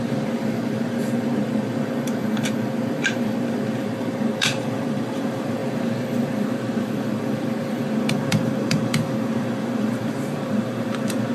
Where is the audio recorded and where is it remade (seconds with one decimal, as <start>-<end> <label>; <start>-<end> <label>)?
0.0-11.3 remade